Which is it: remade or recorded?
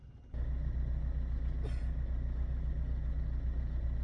recorded